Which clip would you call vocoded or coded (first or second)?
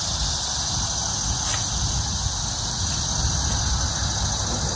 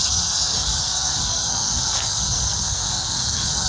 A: second